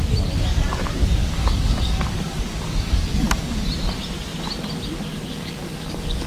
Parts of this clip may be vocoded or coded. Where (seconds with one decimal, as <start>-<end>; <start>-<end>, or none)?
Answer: 1.2-3.5; 5.1-6.3